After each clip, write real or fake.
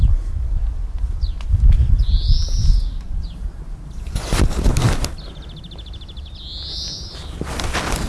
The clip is real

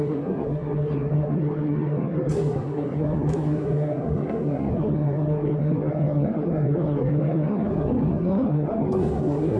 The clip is fake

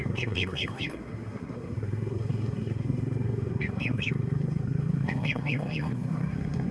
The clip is fake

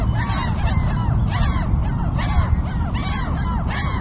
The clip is real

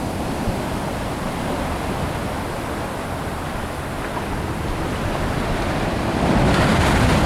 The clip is real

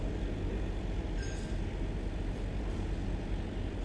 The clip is real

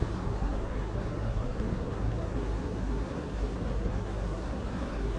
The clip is fake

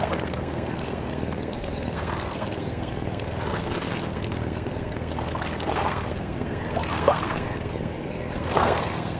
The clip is fake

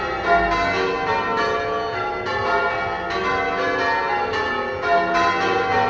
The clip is real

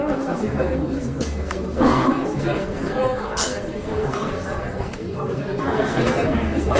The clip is fake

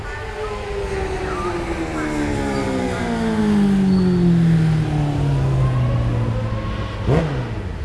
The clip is real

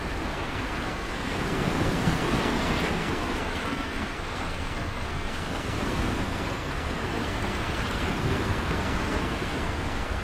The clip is fake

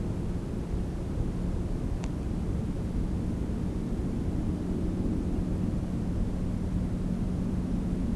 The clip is real